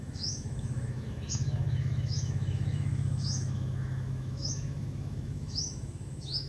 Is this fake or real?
fake